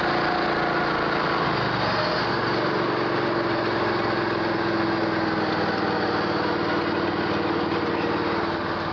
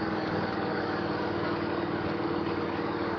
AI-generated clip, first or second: second